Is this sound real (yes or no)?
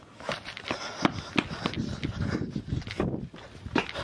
yes